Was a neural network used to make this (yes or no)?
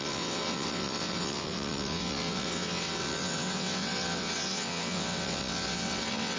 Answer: yes